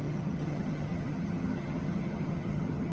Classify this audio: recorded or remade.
remade